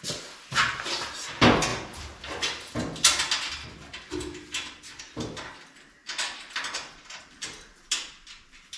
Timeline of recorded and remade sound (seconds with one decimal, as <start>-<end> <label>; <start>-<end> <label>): 0.0-8.8 recorded